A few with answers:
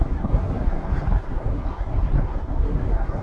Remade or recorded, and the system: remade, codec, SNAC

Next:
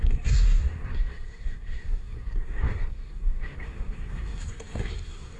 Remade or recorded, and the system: remade, codec, SNAC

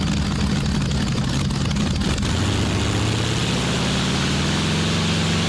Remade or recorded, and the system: recorded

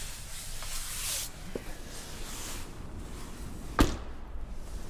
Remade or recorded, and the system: recorded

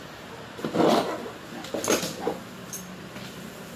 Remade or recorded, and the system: recorded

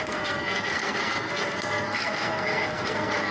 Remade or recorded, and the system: remade, codec, SNAC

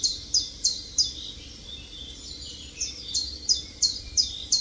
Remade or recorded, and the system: recorded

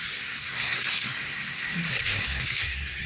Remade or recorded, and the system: remade, codec, SNAC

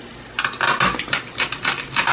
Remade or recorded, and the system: recorded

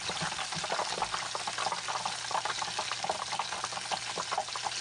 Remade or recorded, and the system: recorded